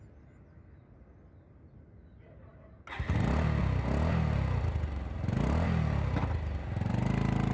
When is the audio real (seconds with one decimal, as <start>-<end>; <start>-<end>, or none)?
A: 0.0-7.5

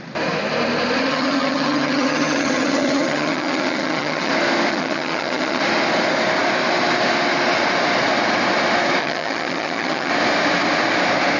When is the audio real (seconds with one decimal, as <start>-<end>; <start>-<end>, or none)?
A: 0.0-1.1; 4.3-4.7; 5.6-9.0; 10.1-11.4

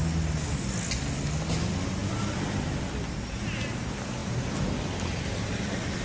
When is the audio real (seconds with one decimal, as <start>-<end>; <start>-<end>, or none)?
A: 0.0-6.0

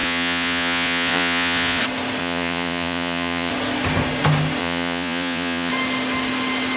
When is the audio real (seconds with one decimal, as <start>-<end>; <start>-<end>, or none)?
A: 1.8-2.2; 3.5-4.6; 5.7-6.8

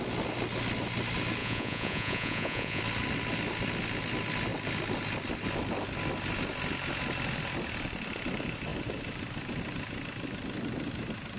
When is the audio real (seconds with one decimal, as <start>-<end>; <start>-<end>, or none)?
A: 0.0-1.4; 2.8-11.4

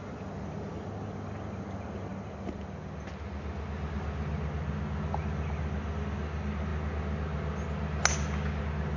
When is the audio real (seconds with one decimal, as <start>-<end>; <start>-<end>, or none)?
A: 0.0-9.0